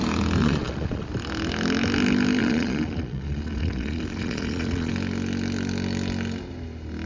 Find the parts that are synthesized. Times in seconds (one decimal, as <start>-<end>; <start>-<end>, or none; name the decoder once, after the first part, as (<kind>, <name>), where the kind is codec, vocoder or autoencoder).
0.4-1.1 (vocoder, Vocos); 2.4-4.9